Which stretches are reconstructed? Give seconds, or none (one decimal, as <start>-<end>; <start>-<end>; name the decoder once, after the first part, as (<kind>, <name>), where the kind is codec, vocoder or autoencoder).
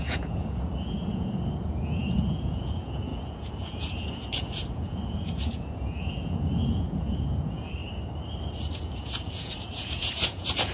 0.0-7.8 (vocoder, Vocos); 8.7-10.7